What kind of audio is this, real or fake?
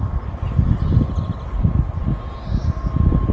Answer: real